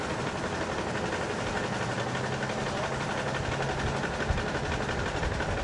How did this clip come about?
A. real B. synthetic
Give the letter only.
A